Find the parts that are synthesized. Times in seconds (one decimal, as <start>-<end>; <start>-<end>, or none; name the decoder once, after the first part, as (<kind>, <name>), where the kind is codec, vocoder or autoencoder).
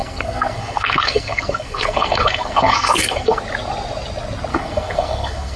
0.0-3.4 (codec, SNAC); 4.5-5.6